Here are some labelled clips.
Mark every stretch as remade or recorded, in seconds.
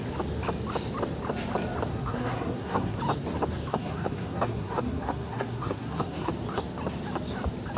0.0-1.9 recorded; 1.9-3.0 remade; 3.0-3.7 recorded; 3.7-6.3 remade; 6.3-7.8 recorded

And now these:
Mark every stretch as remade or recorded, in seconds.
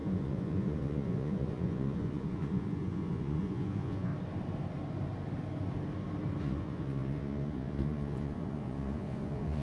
0.0-4.1 remade; 4.1-6.4 recorded; 6.4-9.6 remade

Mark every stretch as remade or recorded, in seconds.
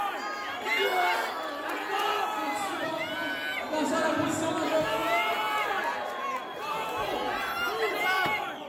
0.0-8.7 recorded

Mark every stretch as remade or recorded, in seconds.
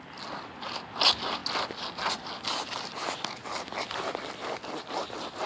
0.0-5.5 recorded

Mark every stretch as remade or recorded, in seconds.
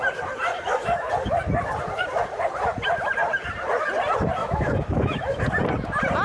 0.0-0.5 recorded; 0.5-1.1 remade; 1.1-4.4 recorded; 4.4-5.4 remade; 5.4-6.2 recorded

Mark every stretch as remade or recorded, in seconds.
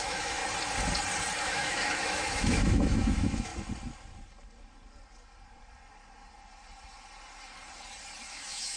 0.0-0.4 remade; 0.4-1.4 recorded; 1.4-3.5 remade; 3.5-8.3 recorded; 8.3-8.8 remade